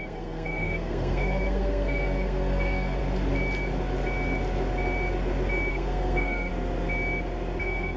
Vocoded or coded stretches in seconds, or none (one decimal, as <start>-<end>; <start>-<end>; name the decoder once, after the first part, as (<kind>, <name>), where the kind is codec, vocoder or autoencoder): 0.0-3.0 (codec, SNAC); 5.7-6.5; 7.6-8.0